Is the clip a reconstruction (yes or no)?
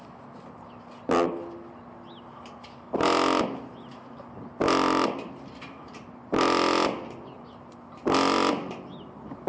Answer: no